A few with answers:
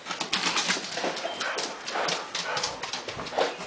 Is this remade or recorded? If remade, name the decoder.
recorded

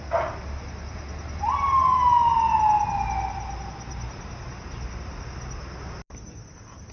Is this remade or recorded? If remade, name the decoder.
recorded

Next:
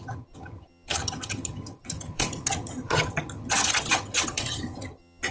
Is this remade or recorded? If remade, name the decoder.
remade, vocoder, HiFi-GAN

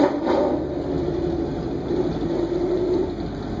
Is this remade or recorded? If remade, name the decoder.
recorded